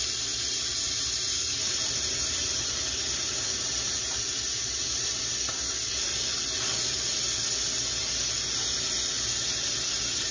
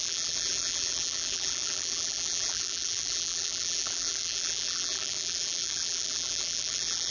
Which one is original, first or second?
first